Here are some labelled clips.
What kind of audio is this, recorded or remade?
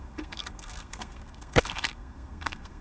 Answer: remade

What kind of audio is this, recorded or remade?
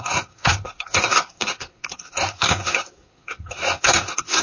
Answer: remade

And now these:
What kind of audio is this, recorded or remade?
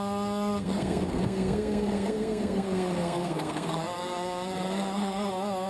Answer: remade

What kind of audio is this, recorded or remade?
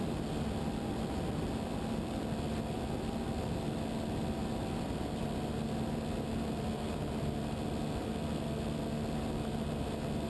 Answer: recorded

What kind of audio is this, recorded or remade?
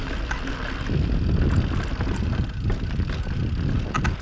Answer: recorded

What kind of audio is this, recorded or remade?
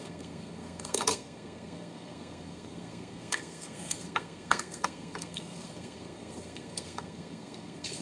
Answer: remade